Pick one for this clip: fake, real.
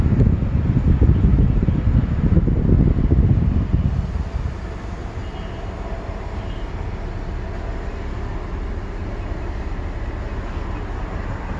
real